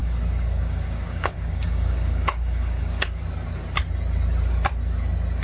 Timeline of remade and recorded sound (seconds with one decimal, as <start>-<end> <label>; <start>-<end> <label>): 0.0-3.2 remade; 3.2-5.4 recorded